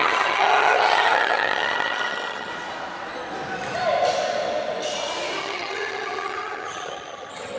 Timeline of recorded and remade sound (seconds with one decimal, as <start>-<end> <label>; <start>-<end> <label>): 0.0-2.5 remade; 2.5-5.4 recorded; 5.4-7.6 remade